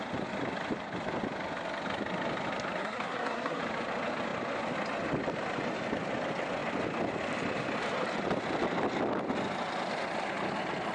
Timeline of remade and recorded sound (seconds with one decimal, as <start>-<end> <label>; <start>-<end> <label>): 0.0-2.8 recorded; 2.8-3.6 remade; 3.6-10.9 recorded